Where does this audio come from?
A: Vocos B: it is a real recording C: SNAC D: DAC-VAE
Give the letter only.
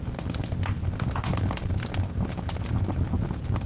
B